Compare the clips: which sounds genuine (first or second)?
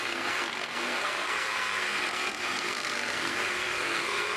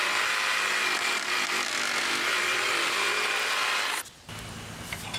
second